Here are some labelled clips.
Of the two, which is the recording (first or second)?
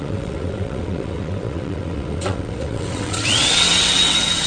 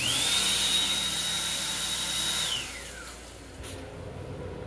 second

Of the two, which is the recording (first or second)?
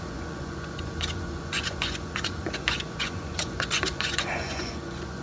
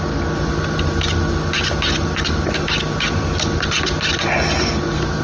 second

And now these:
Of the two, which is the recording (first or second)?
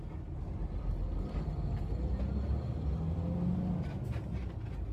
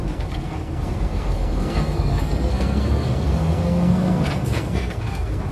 first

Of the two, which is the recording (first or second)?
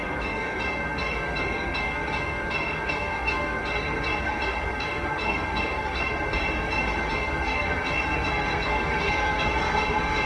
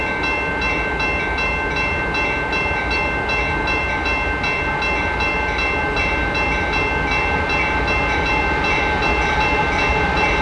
second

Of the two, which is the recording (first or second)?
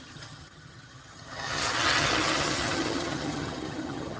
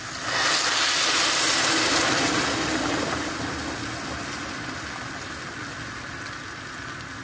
second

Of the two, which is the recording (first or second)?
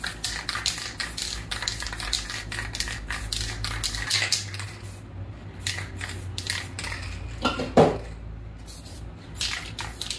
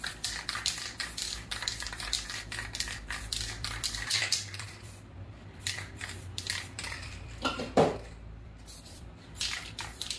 first